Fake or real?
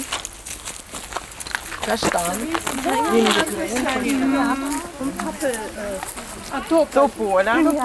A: real